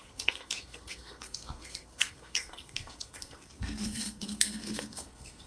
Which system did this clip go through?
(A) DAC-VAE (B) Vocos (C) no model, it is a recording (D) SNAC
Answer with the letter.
D